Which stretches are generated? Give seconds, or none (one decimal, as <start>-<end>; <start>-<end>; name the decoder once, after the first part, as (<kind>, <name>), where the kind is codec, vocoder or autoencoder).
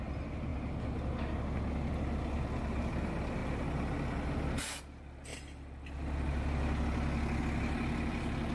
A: none